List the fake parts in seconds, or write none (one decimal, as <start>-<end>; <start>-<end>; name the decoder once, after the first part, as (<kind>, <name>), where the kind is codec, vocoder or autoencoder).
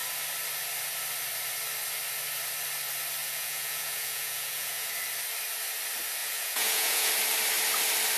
3.2-4.9 (vocoder, Vocos); 6.2-7.1